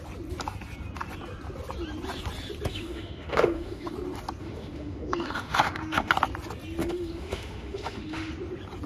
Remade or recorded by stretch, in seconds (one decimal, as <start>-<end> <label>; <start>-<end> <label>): 0.0-2.7 recorded; 2.7-3.9 remade; 3.9-4.4 recorded; 4.4-6.1 remade; 6.1-6.8 recorded; 6.8-8.3 remade; 8.3-8.9 recorded